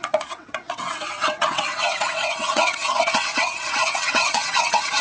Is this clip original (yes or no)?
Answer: no